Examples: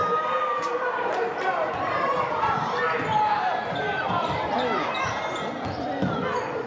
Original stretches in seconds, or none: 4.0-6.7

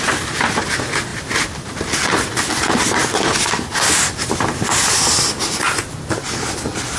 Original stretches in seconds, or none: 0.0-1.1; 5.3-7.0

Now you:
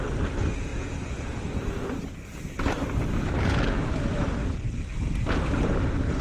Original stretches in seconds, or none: 0.0-6.2